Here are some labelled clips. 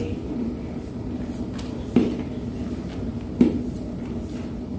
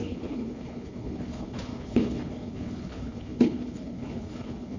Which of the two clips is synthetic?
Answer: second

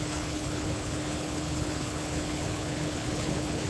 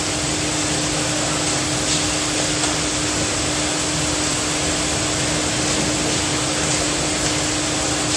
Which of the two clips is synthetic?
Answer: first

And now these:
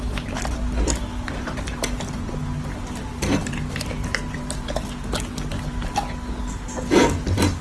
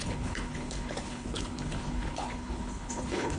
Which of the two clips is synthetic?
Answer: second